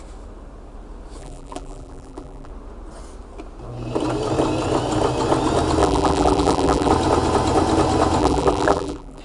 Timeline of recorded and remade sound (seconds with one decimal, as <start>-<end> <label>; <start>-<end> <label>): 0.0-1.2 recorded; 1.2-2.5 remade; 2.5-5.8 recorded; 5.8-6.9 remade; 6.9-8.2 recorded; 8.2-9.2 remade